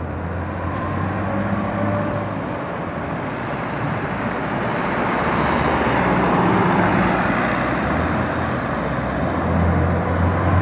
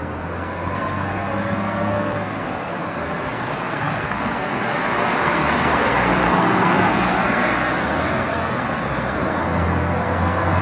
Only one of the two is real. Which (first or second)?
first